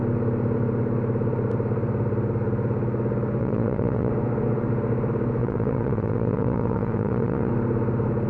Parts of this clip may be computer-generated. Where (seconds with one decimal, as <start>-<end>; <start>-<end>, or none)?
3.4-4.1; 5.4-7.5